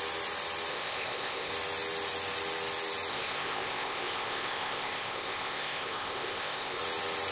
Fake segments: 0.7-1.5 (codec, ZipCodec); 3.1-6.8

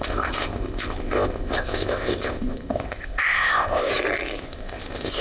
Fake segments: 0.0-3.9 (codec, ZipCodec); 4.4-5.2

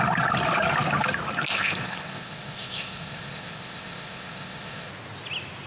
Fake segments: 1.5-4.9 (codec, ZipCodec)

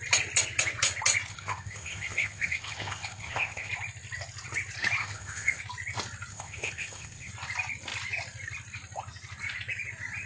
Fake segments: 1.3-3.7 (codec, ZipCodec); 5.0-5.6; 6.3-7.3

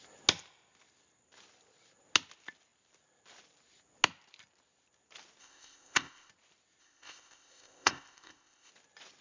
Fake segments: 5.4-6.3 (codec, ZipCodec); 6.8-8.7

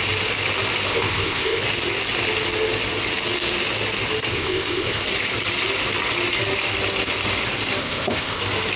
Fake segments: 0.9-1.6 (codec, ZipCodec); 4.3-5.0; 7.8-8.4

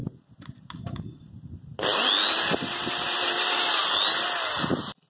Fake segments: none

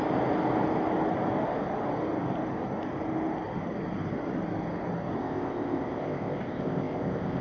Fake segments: 5.2-7.4 (codec, ZipCodec)